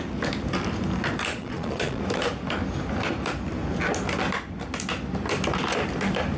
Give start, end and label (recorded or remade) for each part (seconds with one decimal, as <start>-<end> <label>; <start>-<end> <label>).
0.0-1.3 recorded; 1.3-2.0 remade; 2.0-6.4 recorded